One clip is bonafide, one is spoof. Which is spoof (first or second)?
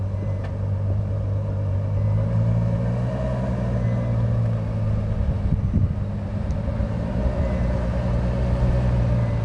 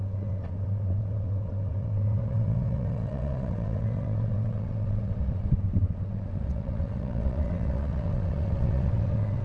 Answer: second